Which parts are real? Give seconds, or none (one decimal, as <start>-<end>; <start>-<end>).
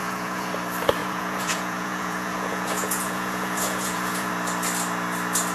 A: 0.5-1.0; 4.3-5.5